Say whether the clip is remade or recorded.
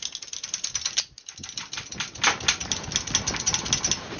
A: recorded